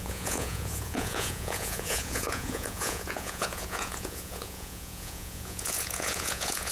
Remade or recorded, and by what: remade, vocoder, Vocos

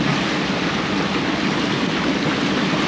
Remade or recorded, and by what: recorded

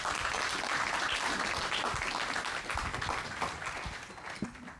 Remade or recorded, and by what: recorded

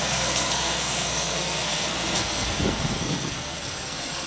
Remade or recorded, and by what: remade, codec, SNAC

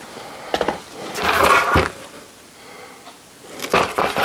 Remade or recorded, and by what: recorded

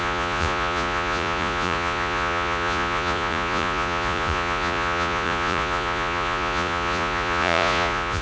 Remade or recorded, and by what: remade, vocoder, Vocos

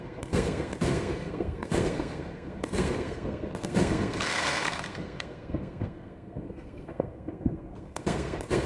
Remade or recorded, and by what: remade, codec, SNAC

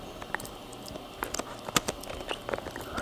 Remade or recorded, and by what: recorded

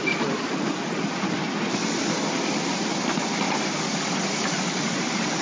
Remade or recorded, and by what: recorded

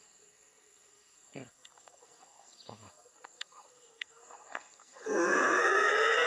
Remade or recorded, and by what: remade, codec, SNAC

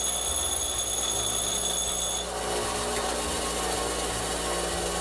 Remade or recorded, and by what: recorded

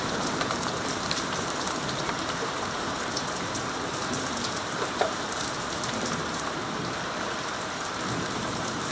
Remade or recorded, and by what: remade, vocoder, BigVGAN v2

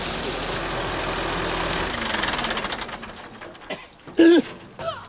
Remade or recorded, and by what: recorded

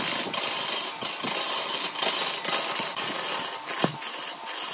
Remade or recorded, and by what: recorded